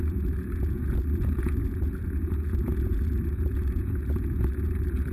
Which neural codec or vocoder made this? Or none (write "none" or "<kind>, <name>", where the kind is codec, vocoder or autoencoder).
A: vocoder, Vocos